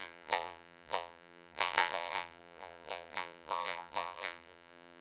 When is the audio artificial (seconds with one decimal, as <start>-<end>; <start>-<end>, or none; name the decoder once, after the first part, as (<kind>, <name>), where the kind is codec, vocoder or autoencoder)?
0.0-5.0 (vocoder, BigVGAN v2)